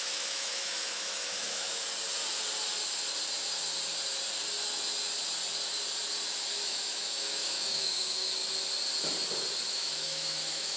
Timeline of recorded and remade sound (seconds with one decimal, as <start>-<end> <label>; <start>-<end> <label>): 0.0-1.8 remade; 1.8-6.5 recorded; 6.5-8.4 remade; 8.4-9.7 recorded; 9.7-10.8 remade

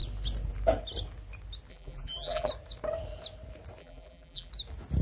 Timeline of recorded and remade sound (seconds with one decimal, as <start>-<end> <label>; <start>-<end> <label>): 0.0-1.7 recorded; 1.7-2.5 remade; 2.5-3.8 recorded; 3.8-4.5 remade; 4.5-5.0 recorded